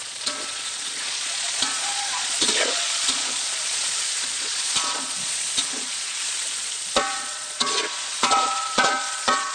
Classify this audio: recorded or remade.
remade